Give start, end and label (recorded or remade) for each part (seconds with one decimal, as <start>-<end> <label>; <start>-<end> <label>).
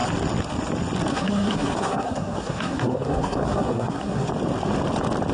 0.0-1.1 recorded; 1.1-4.3 remade; 4.3-5.3 recorded